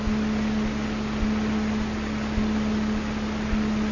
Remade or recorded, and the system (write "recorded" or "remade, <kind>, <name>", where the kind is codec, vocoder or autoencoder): recorded